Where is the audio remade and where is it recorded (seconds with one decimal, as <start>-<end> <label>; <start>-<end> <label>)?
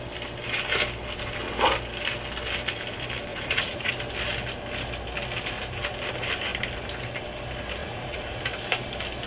0.0-3.3 recorded; 3.3-3.9 remade; 3.9-7.8 recorded; 7.8-8.4 remade; 8.4-9.3 recorded